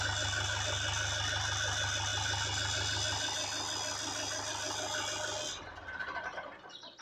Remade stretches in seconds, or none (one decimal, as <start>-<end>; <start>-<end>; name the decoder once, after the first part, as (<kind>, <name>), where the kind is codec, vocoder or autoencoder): none